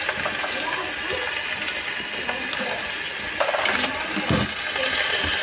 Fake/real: real